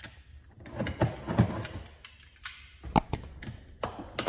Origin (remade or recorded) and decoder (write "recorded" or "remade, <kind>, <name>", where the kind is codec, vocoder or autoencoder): recorded